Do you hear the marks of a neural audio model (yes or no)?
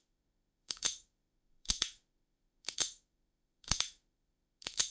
yes